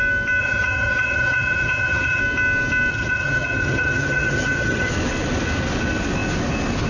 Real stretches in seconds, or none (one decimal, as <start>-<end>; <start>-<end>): 0.0-0.4; 2.2-2.9; 4.9-6.9